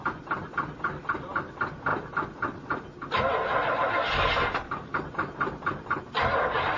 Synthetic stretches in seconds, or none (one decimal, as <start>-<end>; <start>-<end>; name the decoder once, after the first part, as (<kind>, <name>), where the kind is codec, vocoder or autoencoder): none